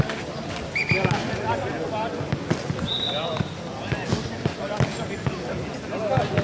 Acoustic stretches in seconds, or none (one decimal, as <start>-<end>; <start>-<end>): 0.0-6.4